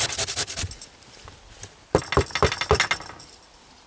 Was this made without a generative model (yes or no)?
yes